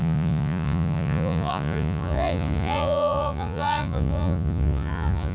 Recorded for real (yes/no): no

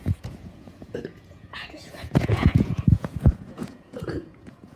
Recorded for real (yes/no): no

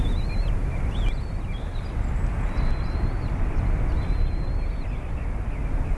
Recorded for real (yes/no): yes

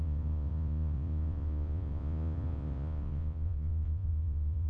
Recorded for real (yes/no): no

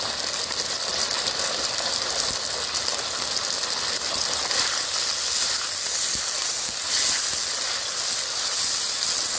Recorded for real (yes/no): yes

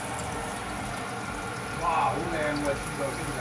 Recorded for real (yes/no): yes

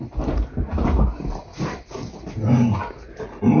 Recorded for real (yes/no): yes